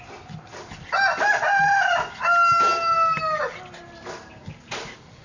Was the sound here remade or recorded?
recorded